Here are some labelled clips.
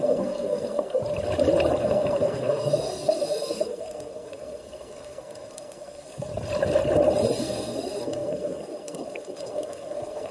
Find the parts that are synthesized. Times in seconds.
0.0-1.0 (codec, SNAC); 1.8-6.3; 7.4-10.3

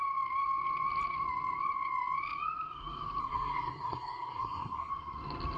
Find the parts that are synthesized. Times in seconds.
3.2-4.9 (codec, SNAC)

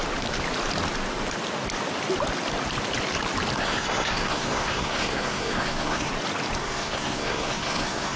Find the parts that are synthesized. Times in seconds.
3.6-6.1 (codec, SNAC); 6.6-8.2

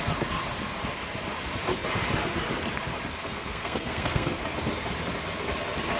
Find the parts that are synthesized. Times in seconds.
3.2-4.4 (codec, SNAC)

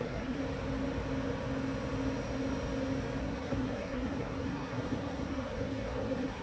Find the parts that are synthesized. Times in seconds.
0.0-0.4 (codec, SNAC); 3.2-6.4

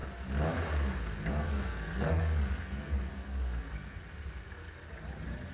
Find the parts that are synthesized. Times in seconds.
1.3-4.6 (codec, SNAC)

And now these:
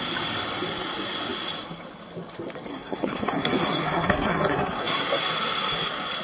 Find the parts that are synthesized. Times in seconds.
2.7-5.2 (codec, SNAC)